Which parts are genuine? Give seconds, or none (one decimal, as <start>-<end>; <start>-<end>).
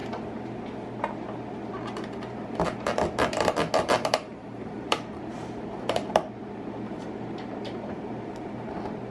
0.0-4.3; 8.5-9.1